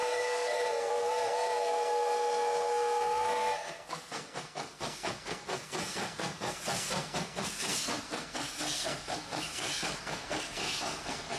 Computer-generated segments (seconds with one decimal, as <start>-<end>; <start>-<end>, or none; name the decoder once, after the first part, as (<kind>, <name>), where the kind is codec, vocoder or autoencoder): 0.0-11.4 (codec, SNAC)